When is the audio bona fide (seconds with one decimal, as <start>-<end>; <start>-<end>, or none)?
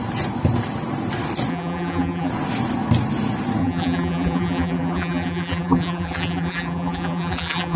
0.0-1.5; 2.3-3.6